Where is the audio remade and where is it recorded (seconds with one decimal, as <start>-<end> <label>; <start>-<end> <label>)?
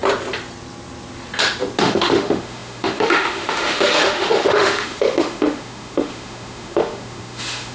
0.0-1.8 recorded; 1.8-7.7 remade